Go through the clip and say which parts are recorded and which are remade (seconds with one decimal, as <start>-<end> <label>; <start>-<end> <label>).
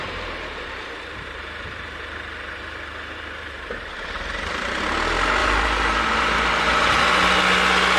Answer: 0.0-4.8 remade; 4.8-5.4 recorded; 5.4-7.0 remade; 7.0-8.0 recorded